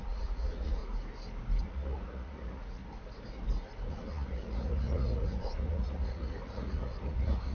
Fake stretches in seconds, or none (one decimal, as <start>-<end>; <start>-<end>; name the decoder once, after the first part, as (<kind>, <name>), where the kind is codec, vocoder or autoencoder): 0.0-0.8 (vocoder, Vocos); 1.6-2.8; 3.9-7.5